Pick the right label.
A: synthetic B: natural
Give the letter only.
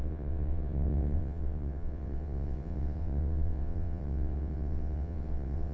A